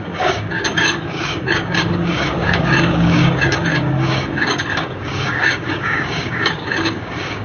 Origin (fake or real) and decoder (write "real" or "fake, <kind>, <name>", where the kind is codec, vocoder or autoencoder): fake, codec, DAC